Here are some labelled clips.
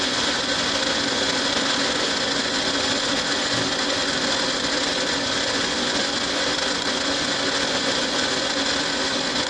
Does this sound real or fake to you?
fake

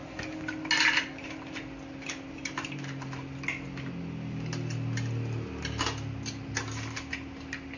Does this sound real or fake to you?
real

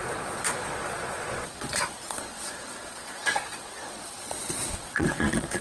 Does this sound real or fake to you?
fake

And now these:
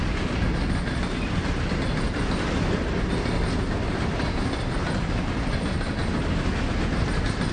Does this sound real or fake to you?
real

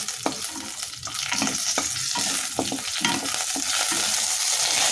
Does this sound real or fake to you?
real